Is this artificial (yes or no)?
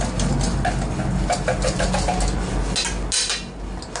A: no